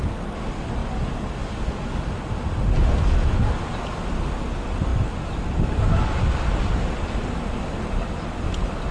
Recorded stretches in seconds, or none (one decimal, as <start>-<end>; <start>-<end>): 0.0-8.9